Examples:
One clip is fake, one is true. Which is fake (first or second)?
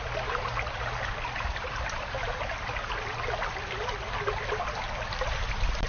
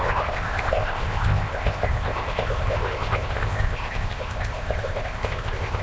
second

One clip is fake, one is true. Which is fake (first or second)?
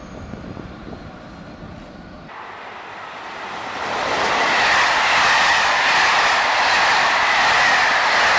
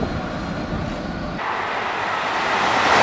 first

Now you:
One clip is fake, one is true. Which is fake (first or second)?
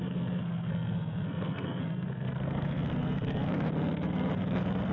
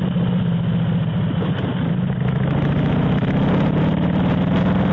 first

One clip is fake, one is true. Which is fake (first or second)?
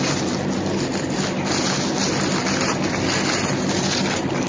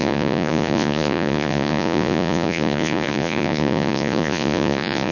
second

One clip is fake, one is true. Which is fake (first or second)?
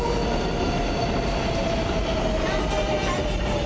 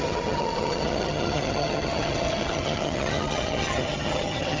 second